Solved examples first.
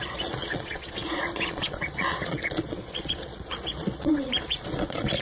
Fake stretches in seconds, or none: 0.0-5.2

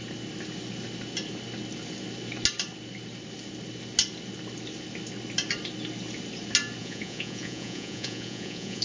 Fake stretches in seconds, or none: 6.8-8.8

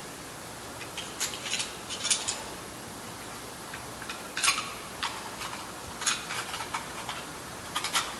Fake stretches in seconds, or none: none

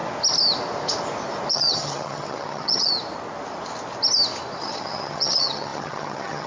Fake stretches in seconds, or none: 1.5-2.9; 4.6-6.5

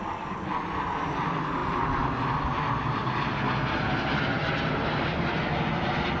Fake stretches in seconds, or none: none

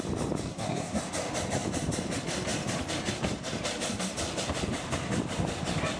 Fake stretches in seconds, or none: 0.5-1.0

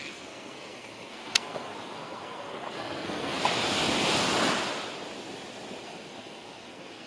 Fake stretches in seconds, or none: 0.0-3.4; 5.8-7.1